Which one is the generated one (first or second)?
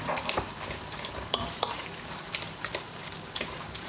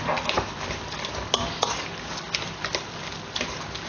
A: first